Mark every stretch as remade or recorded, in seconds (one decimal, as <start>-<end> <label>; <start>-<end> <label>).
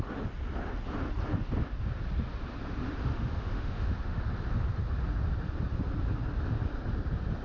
0.0-3.1 recorded; 3.1-4.2 remade; 4.2-7.4 recorded